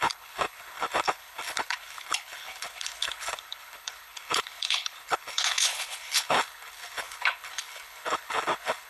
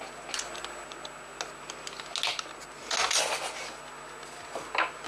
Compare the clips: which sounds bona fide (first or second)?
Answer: second